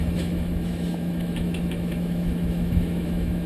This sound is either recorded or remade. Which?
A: remade